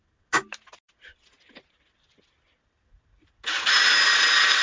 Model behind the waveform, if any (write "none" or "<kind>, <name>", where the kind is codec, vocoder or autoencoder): none